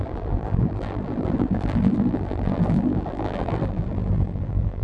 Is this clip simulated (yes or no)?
yes